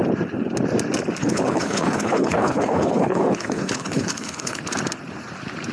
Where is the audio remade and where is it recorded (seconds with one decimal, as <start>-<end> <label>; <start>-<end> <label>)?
0.0-1.2 recorded; 1.2-4.6 remade; 4.6-5.7 recorded